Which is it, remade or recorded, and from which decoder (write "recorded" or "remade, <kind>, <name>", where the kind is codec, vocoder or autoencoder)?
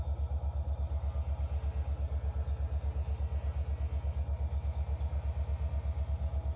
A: recorded